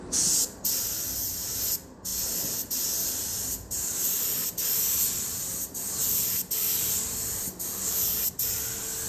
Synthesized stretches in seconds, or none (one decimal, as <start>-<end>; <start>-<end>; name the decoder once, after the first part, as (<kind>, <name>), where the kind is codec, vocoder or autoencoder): none